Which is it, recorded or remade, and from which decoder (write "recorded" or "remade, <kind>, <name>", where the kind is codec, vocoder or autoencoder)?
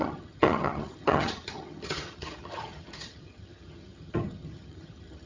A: remade, vocoder, HiFi-GAN